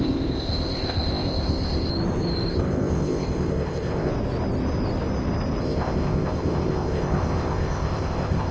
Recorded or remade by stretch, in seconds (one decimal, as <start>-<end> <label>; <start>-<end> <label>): 0.0-1.9 remade; 1.9-2.5 recorded; 2.5-4.1 remade; 4.1-5.6 recorded; 5.6-8.5 remade